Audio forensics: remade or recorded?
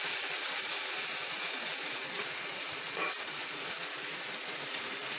remade